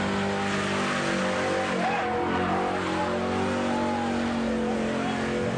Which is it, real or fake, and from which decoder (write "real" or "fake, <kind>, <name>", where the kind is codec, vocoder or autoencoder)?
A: real